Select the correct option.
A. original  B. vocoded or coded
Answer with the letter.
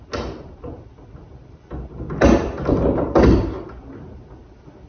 A